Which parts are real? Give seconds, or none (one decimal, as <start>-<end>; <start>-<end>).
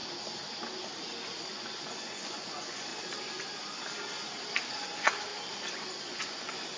0.0-1.5; 2.9-4.7; 5.3-6.0